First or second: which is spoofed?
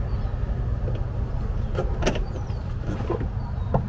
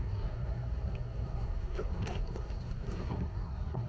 second